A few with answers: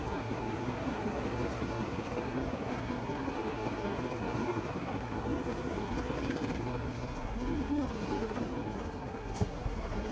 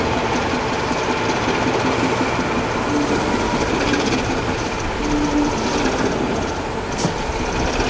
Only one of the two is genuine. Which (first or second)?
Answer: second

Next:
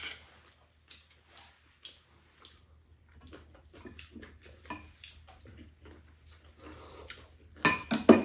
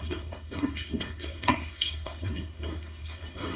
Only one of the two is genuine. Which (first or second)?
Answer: first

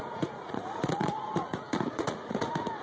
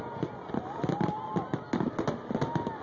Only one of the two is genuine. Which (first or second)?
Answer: second